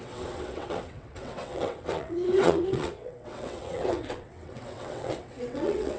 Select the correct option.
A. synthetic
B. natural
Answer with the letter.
A